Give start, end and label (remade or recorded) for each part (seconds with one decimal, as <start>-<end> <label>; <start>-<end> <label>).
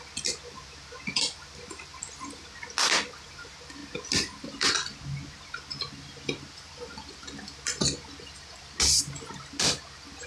0.0-10.3 recorded